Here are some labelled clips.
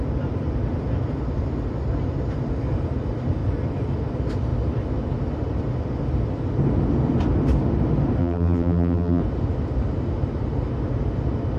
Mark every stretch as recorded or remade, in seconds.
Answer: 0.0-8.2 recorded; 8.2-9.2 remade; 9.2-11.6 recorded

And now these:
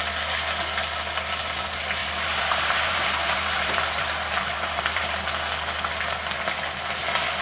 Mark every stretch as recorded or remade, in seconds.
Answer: 0.0-2.0 recorded; 2.0-5.2 remade; 5.2-7.4 recorded

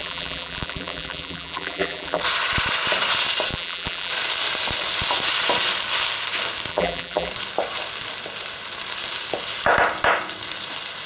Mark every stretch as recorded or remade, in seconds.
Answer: 0.0-2.2 remade; 2.2-3.5 recorded; 3.5-4.1 remade; 4.1-6.7 recorded; 6.7-7.3 remade; 7.3-11.1 recorded

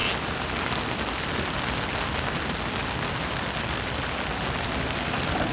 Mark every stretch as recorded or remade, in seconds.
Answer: 0.0-5.5 remade

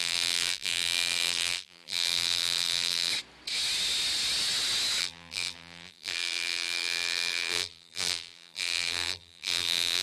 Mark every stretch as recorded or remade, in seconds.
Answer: 0.0-3.1 remade; 3.1-5.0 recorded; 5.0-10.0 remade

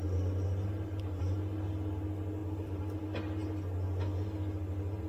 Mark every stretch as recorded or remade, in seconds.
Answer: 0.0-2.4 recorded; 2.4-3.0 remade; 3.0-5.1 recorded